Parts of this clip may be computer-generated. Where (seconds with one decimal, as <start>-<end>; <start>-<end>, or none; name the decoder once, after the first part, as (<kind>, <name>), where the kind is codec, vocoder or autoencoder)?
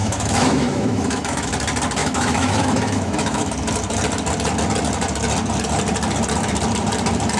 0.0-1.5 (autoencoder, DAC-VAE); 2.0-3.5